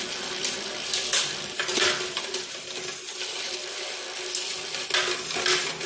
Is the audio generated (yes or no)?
no